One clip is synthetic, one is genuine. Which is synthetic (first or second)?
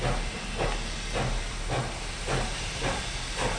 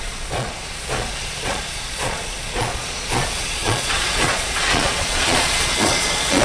second